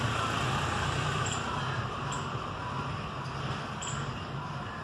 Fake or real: real